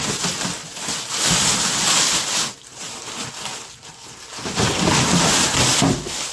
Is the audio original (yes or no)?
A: yes